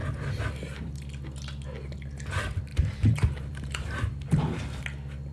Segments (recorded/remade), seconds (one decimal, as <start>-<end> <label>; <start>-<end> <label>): 0.0-2.7 recorded; 2.7-4.6 remade; 4.6-5.3 recorded